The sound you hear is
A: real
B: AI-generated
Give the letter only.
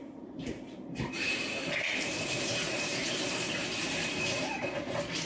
B